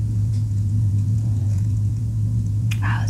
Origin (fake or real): fake